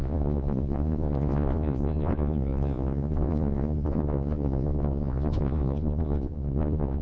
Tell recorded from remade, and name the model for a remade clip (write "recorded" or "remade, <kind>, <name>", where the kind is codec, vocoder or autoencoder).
remade, vocoder, Vocos